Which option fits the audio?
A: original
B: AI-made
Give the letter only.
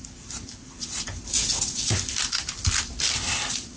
B